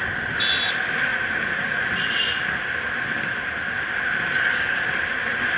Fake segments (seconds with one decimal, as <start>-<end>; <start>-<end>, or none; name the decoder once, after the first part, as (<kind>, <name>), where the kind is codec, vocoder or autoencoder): 1.1-1.9 (vocoder, Vocos)